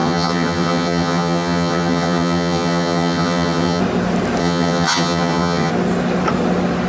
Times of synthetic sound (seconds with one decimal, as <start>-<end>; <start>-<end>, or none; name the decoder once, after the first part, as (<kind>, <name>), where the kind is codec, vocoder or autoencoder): 0.0-3.8 (vocoder, HiFi-GAN); 4.4-5.7